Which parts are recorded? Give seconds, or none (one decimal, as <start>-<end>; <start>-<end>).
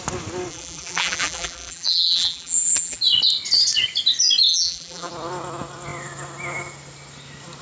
0.0-0.5; 3.0-4.5; 5.1-7.6